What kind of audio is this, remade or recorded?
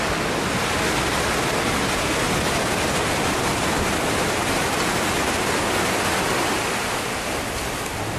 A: recorded